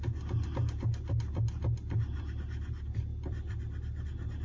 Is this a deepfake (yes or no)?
no